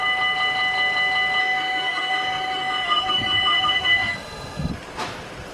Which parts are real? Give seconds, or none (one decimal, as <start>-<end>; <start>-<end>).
0.0-1.4; 4.7-5.5